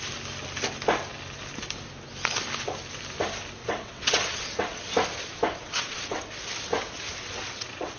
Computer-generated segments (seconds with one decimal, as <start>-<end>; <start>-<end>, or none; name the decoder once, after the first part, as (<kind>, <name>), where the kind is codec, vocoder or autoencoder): 3.6-4.9 (vocoder, WaveNeXt); 5.6-6.3; 6.7-8.0